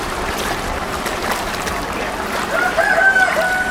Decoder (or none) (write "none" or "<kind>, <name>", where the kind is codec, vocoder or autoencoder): vocoder, BigVGAN v2